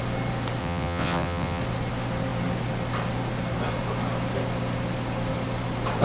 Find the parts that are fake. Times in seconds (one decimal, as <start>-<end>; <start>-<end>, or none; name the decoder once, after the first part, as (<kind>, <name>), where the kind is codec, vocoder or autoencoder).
0.6-1.6 (vocoder, WaveNeXt)